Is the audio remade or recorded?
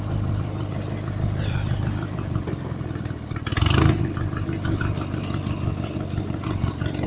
recorded